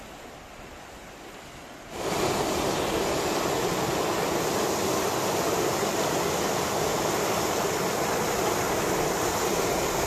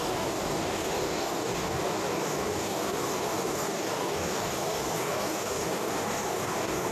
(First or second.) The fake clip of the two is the second